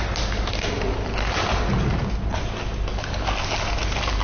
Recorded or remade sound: recorded